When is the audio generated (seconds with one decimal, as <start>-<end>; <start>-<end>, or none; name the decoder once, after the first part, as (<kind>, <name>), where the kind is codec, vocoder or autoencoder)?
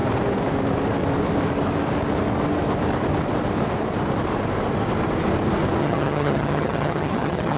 5.8-7.6 (vocoder, HiFi-GAN)